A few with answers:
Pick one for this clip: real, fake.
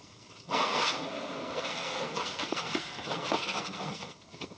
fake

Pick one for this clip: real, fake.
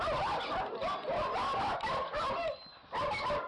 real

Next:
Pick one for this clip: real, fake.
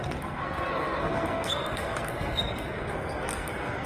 fake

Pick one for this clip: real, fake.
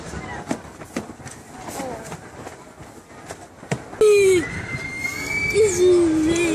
real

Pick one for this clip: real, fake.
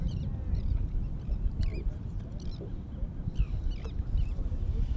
real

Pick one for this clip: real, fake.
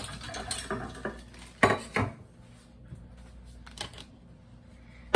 real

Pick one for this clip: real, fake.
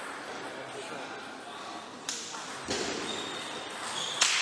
real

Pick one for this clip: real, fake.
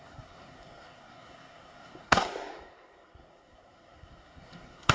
fake